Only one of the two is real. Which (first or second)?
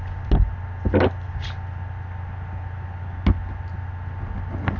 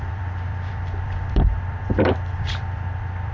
first